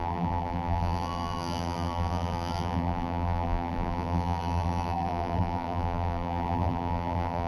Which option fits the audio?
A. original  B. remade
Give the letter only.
B